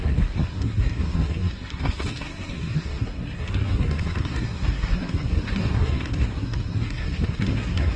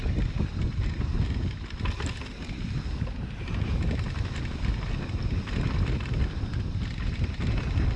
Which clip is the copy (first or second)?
first